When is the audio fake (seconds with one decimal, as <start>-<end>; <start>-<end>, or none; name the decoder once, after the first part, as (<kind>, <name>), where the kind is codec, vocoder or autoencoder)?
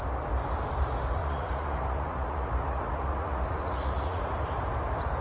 1.2-4.2 (vocoder, Vocos)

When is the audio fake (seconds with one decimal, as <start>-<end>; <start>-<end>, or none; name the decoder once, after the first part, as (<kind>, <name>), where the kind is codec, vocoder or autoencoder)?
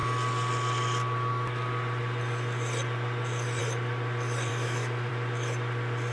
4.5-5.1 (autoencoder, DAC-VAE)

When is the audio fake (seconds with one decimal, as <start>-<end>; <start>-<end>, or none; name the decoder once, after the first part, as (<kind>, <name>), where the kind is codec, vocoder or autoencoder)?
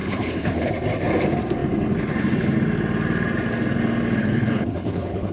0.0-0.7 (codec, HILCodec); 4.2-5.3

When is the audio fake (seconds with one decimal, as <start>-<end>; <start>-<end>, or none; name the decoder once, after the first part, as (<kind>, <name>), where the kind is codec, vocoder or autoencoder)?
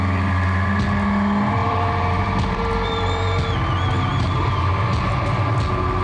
1.6-3.4 (vocoder, BigVGAN v2); 4.1-4.7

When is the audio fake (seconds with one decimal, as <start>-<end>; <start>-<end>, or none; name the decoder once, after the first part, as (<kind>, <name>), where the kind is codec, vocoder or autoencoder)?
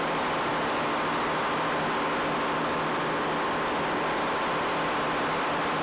0.0-0.5 (vocoder, BigVGAN v2); 4.0-5.8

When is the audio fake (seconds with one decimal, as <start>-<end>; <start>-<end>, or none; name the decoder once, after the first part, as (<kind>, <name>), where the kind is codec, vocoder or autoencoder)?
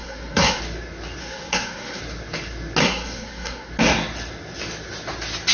0.0-0.6 (codec, SNAC); 1.2-2.0; 2.8-3.7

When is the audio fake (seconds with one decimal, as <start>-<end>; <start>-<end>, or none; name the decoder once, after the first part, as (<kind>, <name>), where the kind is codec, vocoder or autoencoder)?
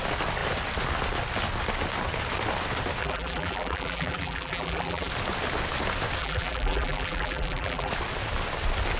3.0-5.1 (vocoder, BigVGAN v2); 6.2-7.9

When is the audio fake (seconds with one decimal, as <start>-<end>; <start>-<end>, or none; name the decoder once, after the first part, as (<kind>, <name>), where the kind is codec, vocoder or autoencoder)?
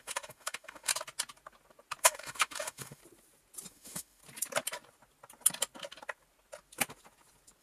0.0-0.9 (autoencoder, DAC-VAE); 2.0-3.0; 3.7-4.2